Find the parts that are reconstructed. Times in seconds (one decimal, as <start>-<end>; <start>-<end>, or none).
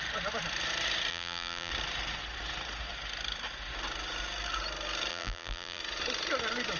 1.1-1.7; 5.1-5.8